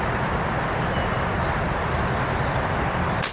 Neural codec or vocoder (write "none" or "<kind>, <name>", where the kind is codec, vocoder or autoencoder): none